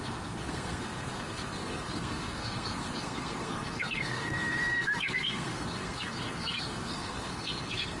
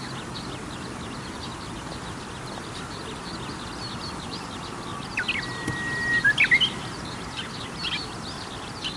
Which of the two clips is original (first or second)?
second